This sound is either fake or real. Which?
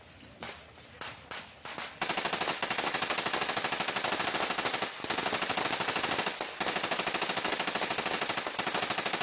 real